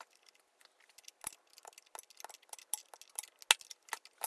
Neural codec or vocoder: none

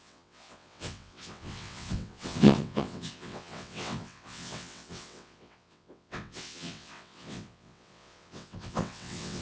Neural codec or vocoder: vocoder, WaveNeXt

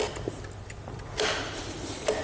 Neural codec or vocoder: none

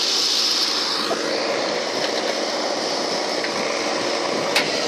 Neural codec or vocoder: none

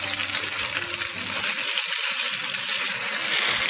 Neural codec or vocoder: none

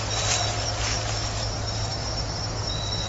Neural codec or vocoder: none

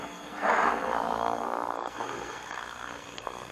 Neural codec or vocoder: codec, SNAC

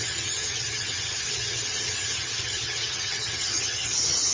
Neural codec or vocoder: vocoder, HiFi-GAN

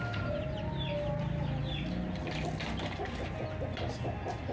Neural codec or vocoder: none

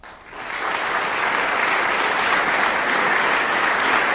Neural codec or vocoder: none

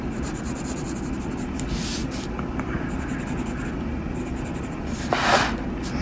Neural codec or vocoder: none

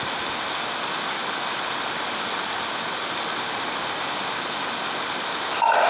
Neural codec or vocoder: none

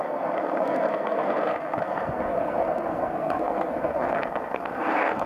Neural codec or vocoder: codec, SNAC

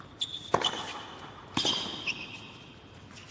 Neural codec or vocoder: vocoder, BigVGAN v2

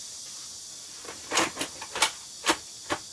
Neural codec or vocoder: none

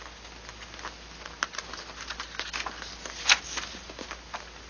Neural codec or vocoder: none